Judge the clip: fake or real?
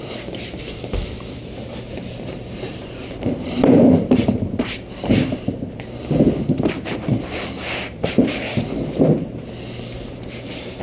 fake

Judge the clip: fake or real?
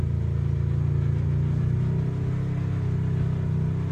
real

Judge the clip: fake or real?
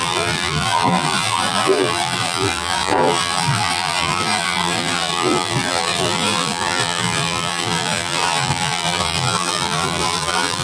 fake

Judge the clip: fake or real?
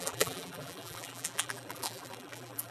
fake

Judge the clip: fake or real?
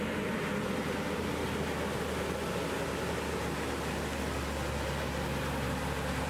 real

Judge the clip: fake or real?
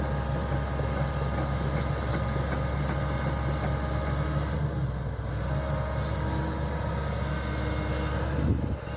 real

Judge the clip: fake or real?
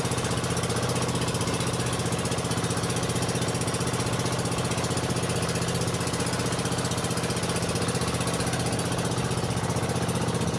real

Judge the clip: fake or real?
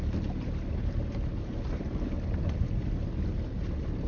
real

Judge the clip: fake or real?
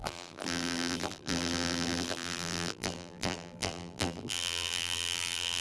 fake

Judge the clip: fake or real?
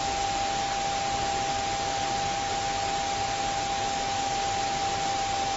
real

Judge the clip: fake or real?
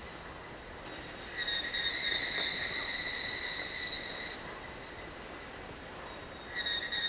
real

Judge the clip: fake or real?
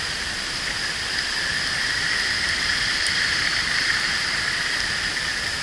fake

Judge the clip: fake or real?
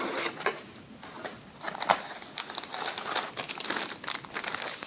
real